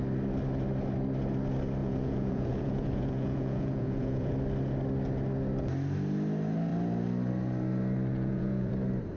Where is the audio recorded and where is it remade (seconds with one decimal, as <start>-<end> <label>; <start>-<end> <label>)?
0.0-1.8 recorded; 1.8-4.3 remade; 4.3-8.1 recorded; 8.1-8.7 remade; 8.7-9.2 recorded